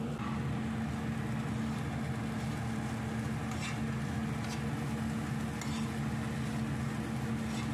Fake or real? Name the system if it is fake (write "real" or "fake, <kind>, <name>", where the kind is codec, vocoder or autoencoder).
real